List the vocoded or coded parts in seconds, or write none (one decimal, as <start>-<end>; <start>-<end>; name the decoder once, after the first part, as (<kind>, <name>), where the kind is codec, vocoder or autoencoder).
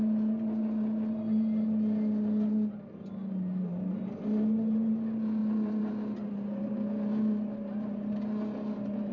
5.4-7.9 (vocoder, BigVGAN v2)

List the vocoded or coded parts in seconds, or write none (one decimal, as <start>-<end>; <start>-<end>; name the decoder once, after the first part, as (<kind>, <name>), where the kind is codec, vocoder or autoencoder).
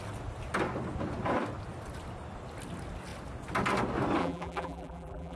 4.2-5.4 (vocoder, BigVGAN v2)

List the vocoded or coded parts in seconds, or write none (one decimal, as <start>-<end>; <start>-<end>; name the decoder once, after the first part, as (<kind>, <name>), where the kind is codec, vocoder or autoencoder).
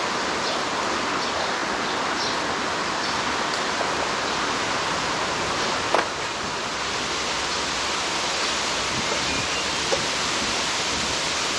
none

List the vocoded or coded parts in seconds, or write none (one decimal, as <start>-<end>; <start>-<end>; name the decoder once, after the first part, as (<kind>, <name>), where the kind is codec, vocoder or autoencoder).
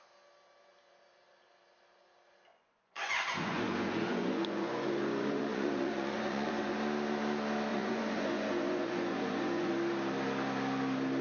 2.5-6.8 (vocoder, Vocos); 7.7-9.7